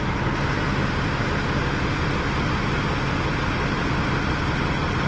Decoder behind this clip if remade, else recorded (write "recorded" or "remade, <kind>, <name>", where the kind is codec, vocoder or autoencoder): recorded